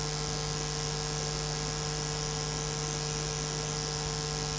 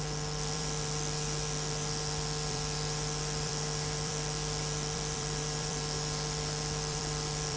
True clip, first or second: first